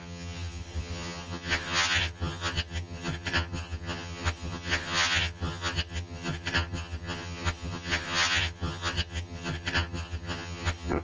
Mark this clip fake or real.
fake